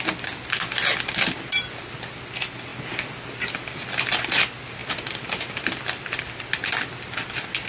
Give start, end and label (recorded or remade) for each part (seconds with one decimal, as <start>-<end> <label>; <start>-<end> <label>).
0.0-7.7 recorded